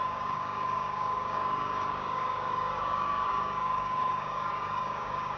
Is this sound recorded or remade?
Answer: remade